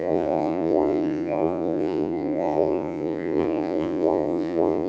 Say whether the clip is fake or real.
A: fake